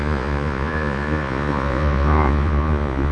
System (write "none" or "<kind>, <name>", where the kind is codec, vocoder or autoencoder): vocoder, Vocos